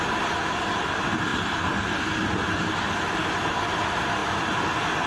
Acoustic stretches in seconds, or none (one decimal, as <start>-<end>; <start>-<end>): 0.0-5.1